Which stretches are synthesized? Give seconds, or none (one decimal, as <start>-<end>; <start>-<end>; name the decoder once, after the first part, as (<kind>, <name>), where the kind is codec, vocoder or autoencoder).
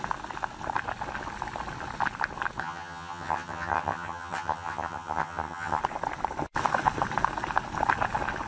2.6-5.8 (vocoder, HiFi-GAN)